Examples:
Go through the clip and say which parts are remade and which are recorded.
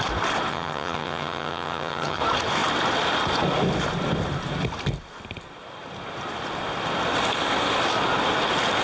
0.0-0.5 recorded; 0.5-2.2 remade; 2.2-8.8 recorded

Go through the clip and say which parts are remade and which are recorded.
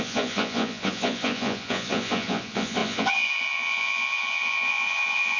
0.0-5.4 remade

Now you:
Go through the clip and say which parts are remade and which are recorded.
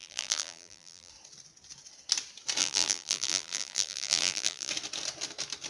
0.0-1.1 remade; 1.1-2.6 recorded; 2.6-4.7 remade; 4.7-5.7 recorded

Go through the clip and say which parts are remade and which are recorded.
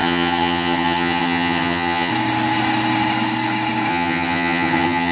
0.0-2.1 remade; 2.1-3.9 recorded; 3.9-5.1 remade